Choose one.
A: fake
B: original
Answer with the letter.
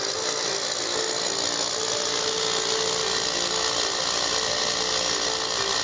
B